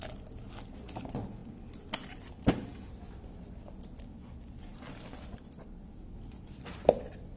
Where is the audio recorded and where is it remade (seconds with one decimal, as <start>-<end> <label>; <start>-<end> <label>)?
0.0-7.4 recorded